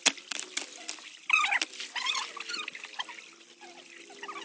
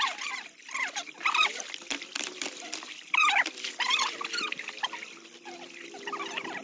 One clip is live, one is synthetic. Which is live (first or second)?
first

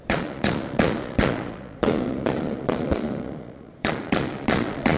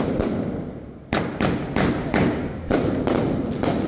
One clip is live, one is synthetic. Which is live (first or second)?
second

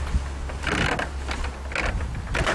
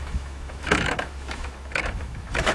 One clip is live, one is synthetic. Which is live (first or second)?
first